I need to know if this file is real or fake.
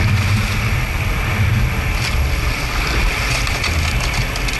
real